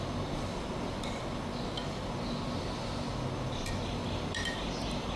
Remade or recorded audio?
recorded